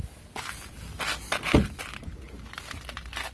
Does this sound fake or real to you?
real